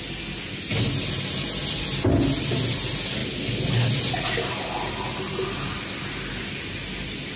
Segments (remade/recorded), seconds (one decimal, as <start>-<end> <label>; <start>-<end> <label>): 0.0-7.4 recorded